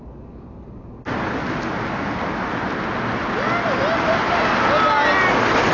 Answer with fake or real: real